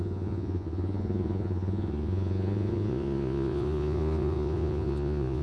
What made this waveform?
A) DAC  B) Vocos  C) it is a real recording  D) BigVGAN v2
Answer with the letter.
B